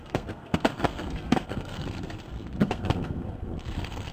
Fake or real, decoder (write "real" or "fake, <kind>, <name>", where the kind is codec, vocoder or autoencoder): fake, codec, SNAC